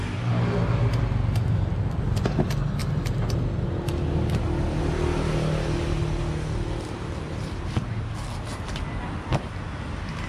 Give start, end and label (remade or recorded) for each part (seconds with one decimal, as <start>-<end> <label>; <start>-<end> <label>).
0.0-10.3 recorded